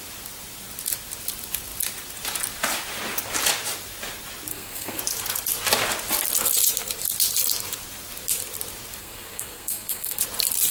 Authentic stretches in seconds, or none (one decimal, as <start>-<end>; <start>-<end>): 0.0-4.5; 5.0-9.0; 10.2-10.7